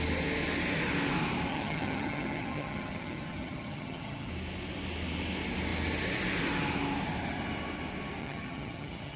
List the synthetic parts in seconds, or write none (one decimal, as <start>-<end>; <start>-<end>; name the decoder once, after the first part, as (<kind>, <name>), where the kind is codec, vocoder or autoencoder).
1.5-4.3 (vocoder, HiFi-GAN); 8.2-9.2